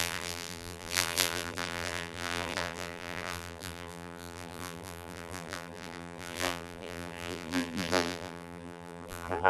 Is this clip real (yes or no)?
no